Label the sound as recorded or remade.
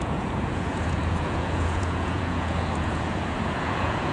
remade